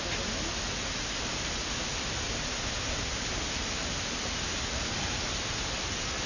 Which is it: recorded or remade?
recorded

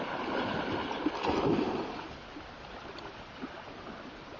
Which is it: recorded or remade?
recorded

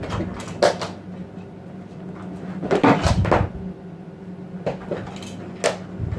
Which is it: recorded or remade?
recorded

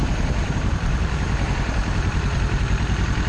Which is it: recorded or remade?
remade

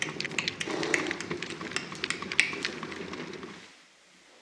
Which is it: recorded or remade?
recorded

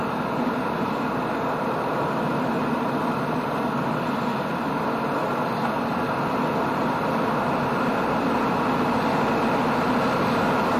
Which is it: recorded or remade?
recorded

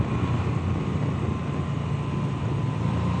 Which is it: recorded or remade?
recorded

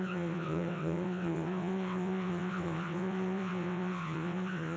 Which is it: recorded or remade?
remade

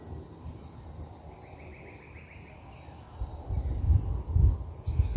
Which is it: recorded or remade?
recorded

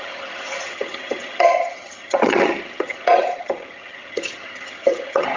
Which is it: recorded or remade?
remade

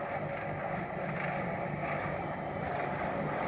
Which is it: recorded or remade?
recorded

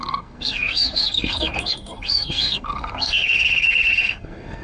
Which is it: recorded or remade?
remade